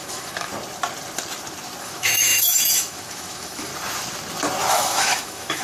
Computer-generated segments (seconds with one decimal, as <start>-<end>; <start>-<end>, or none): 0.0-0.5; 1.8-3.7; 4.7-5.6